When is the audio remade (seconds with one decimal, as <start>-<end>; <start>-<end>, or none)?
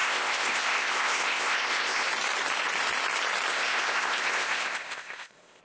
0.0-2.1; 3.5-5.6